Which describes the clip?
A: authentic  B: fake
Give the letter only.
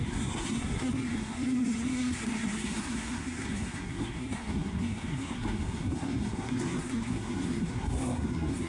B